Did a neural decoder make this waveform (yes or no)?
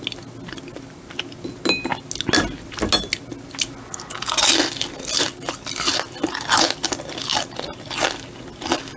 no